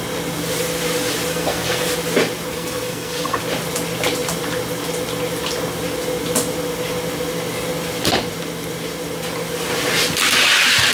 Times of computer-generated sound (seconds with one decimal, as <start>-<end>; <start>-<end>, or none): 1.3-1.9; 2.5-3.4

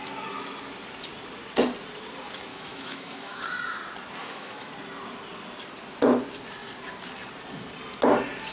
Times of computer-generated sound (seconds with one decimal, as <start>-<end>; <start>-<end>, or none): 2.5-3.4; 4.2-4.7

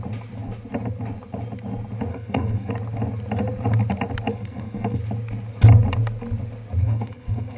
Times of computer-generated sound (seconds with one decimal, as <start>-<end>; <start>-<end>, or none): 2.1-2.7; 4.3-5.0; 6.8-7.6

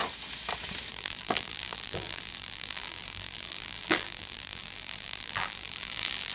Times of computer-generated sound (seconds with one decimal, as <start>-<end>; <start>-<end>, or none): 0.9-6.3

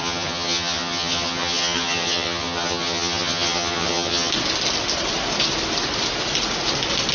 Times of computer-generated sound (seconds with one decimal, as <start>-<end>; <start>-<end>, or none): 0.0-4.3

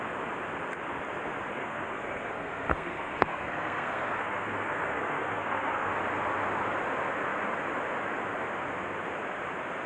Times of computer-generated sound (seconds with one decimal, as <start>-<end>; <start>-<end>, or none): 1.5-5.9

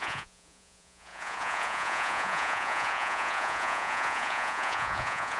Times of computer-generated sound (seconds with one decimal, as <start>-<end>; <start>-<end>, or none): 0.0-5.4